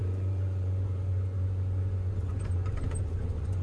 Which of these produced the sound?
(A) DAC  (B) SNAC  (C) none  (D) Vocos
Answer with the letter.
D